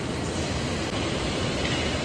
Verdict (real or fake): real